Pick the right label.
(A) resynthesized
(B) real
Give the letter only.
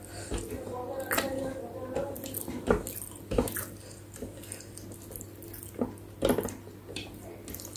B